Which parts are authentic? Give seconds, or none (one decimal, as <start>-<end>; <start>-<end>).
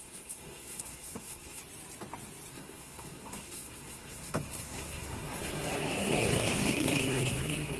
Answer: 1.6-2.5